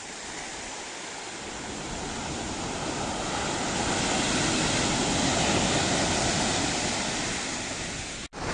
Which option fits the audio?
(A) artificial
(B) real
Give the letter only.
B